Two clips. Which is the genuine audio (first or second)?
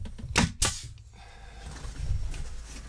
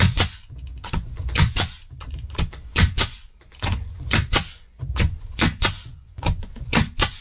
first